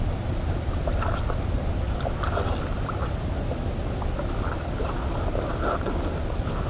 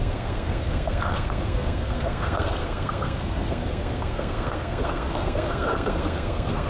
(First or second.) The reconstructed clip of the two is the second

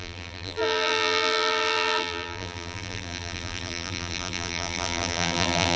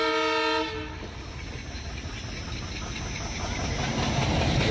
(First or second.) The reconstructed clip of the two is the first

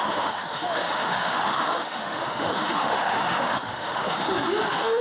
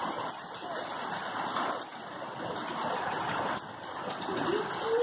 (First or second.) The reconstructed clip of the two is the first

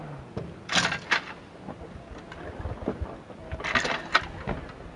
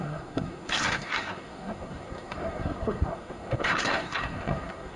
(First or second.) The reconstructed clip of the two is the second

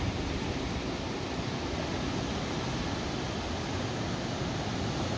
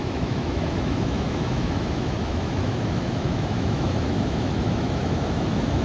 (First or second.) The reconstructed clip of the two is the second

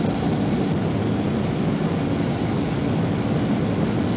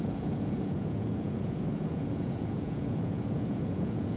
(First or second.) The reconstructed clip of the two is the second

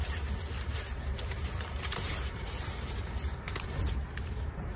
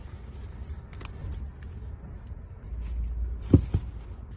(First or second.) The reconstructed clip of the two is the first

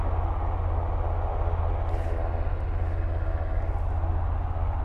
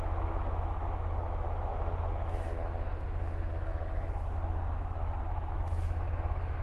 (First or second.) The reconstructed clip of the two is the second